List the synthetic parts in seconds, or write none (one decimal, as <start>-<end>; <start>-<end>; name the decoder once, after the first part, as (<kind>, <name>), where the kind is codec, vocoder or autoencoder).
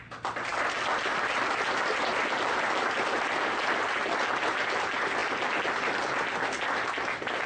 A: none